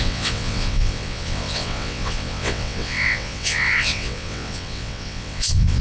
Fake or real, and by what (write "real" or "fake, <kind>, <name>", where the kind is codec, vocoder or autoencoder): fake, vocoder, WaveNeXt